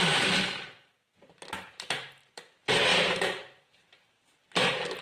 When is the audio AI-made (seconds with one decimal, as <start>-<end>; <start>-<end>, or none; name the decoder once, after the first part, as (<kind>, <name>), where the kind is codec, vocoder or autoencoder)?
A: 0.0-5.0 (vocoder, BigVGAN v2)